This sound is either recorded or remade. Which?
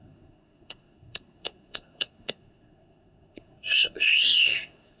remade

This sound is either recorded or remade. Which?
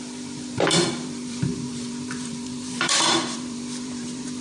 remade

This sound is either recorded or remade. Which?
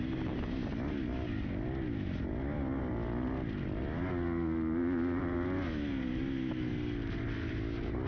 recorded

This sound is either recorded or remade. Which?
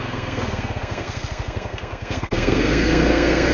remade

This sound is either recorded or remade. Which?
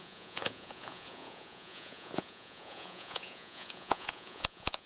remade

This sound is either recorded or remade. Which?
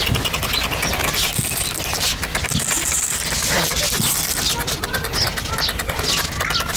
recorded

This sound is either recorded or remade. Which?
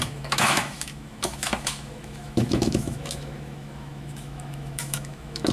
remade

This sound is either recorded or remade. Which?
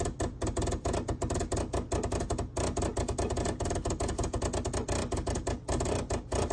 recorded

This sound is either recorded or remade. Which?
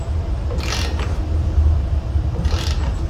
recorded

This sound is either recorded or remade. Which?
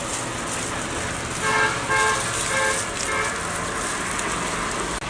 recorded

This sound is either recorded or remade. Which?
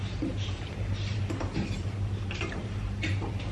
remade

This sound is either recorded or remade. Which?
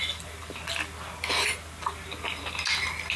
recorded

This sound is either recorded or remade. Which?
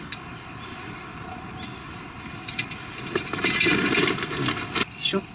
recorded